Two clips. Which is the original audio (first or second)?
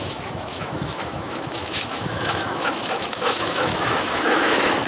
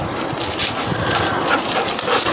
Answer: second